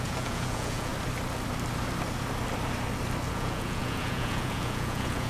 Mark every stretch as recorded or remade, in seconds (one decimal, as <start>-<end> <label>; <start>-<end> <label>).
0.0-0.9 remade; 0.9-3.3 recorded; 3.3-5.3 remade